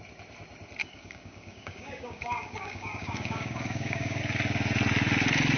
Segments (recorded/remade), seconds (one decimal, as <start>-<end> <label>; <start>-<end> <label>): 0.0-0.8 recorded; 0.8-4.2 remade; 4.2-5.6 recorded